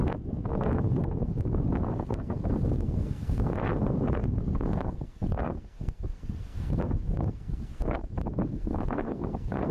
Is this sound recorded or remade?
remade